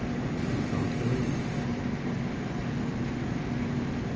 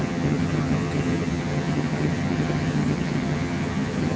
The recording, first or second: first